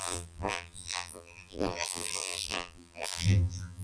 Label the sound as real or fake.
fake